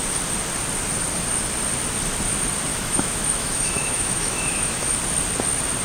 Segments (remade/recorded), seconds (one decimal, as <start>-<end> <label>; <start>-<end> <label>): 0.0-2.7 recorded; 2.7-5.0 remade; 5.0-5.8 recorded